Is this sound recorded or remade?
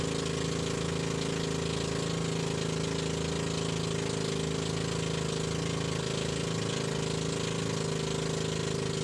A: recorded